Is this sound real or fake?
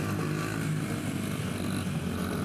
real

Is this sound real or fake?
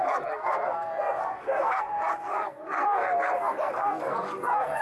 fake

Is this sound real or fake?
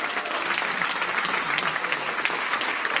real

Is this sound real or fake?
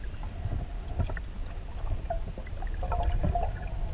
real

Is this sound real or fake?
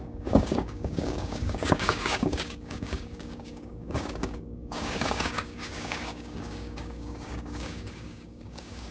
fake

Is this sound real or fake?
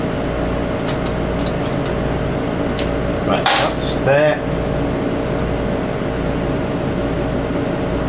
real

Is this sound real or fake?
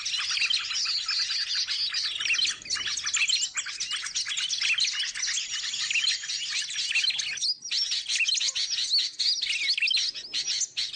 real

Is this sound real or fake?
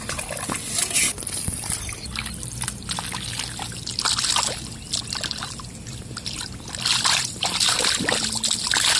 real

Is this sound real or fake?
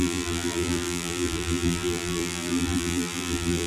fake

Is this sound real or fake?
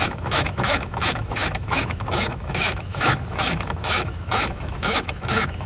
fake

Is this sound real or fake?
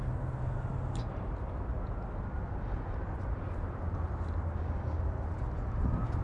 real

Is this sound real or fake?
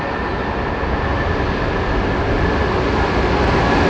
real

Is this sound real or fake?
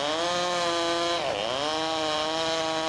real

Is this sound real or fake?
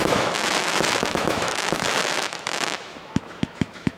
fake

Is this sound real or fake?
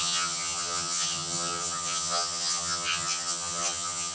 fake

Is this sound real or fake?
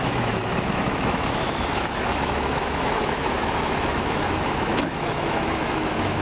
fake